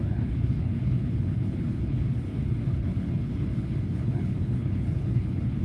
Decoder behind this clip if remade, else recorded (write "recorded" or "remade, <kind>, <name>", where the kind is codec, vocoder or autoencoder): remade, codec, HILCodec